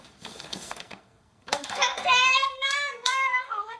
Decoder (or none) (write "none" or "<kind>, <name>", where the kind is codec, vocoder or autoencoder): codec, SNAC